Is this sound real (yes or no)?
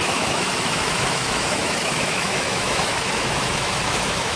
no